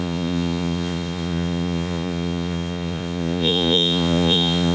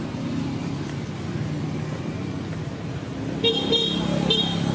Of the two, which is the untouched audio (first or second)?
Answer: second